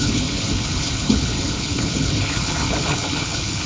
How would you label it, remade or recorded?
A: remade